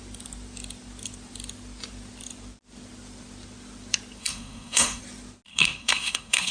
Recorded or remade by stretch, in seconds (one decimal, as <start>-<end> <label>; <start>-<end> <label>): 0.0-4.2 recorded; 4.2-5.0 remade; 5.0-5.5 recorded; 5.5-6.5 remade